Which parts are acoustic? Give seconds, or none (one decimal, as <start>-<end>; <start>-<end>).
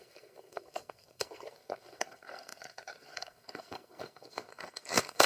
none